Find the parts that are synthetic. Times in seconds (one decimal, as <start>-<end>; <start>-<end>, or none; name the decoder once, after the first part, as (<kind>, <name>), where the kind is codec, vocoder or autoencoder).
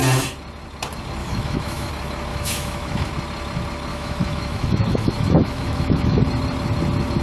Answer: 1.2-1.9 (autoencoder, DAC-VAE); 2.3-3.1; 3.9-6.2